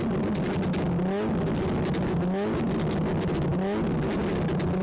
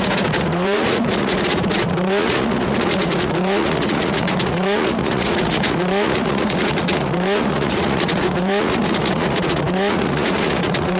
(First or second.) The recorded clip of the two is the first